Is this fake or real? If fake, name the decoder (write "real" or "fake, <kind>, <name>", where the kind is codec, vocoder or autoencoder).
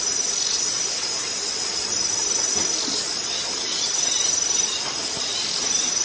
real